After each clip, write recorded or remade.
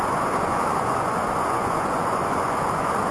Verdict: remade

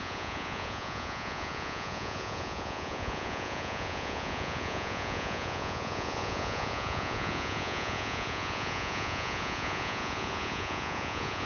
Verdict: remade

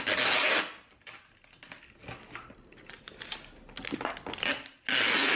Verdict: recorded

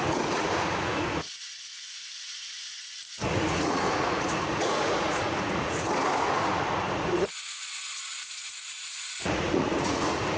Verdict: remade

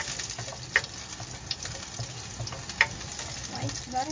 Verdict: recorded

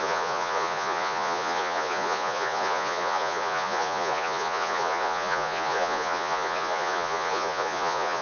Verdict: remade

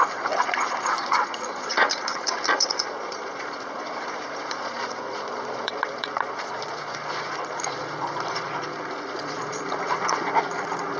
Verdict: remade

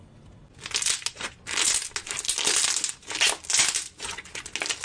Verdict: recorded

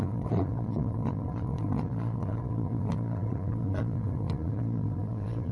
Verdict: remade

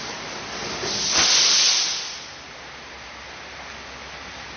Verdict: recorded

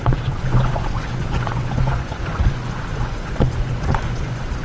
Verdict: remade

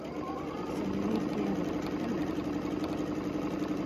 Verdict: recorded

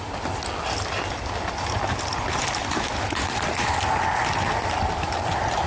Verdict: recorded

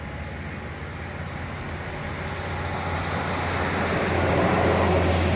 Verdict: recorded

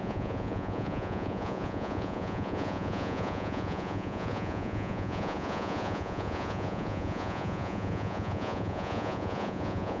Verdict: remade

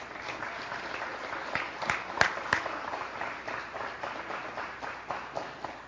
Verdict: recorded